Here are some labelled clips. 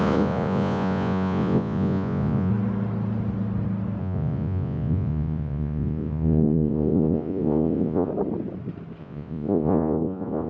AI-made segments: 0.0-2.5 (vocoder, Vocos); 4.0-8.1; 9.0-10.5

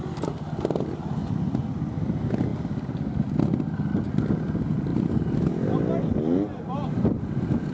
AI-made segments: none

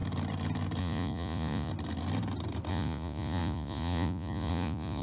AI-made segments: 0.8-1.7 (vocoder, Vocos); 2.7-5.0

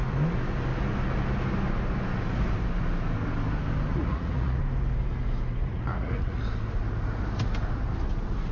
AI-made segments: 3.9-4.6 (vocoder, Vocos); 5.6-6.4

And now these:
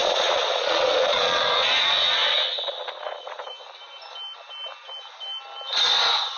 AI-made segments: 0.0-3.5 (vocoder, Vocos)

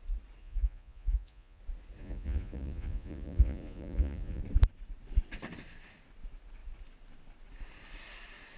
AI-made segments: 0.4-1.6 (vocoder, Vocos); 2.0-4.4

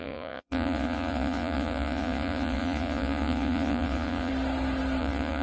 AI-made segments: 0.0-4.3 (vocoder, Vocos); 5.0-5.4

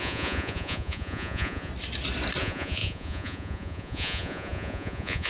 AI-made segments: 0.0-1.7 (vocoder, Vocos); 2.4-5.3